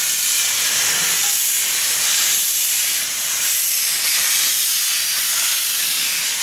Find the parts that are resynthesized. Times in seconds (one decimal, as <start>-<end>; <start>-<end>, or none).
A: 0.0-6.4